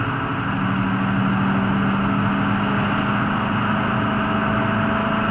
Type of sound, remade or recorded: recorded